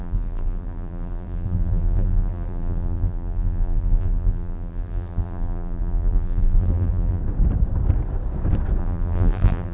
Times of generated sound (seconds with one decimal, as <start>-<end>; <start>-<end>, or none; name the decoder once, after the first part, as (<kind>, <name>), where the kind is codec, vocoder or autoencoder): 0.0-7.2 (vocoder, BigVGAN v2); 8.8-9.7